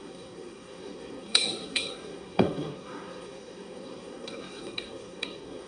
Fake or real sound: fake